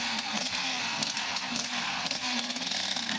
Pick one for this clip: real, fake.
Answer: fake